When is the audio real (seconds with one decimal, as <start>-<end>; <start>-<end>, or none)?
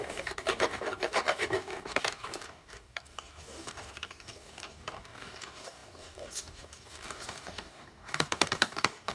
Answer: none